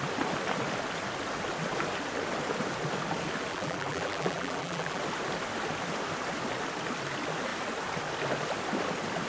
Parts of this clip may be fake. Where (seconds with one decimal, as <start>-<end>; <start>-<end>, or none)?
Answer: 3.5-5.0